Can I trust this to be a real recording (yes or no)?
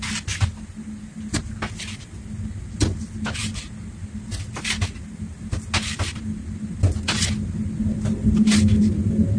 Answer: yes